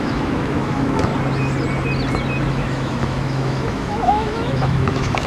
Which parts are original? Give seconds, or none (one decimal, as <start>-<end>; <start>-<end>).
1.1-2.5